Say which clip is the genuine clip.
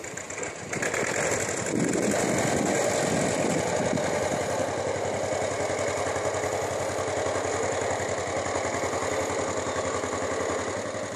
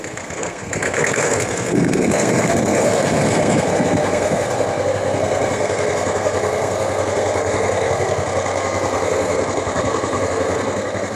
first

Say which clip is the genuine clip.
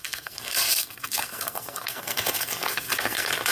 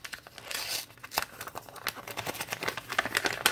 second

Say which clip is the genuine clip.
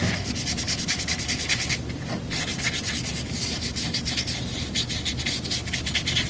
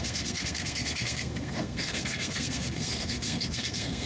first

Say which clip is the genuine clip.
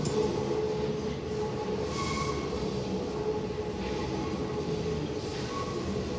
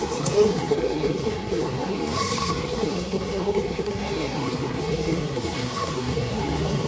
first